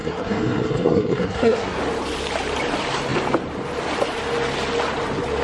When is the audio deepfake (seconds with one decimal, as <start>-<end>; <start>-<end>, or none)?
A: 0.0-1.8